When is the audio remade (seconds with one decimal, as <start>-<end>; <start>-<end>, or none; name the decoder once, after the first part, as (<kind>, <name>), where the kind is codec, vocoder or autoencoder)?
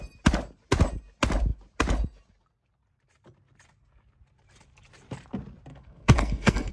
5.7-6.7 (codec, SNAC)